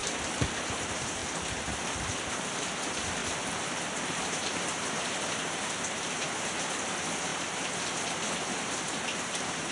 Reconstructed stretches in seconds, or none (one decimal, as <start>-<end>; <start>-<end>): 0.6-1.2; 2.3-3.2; 4.0-9.7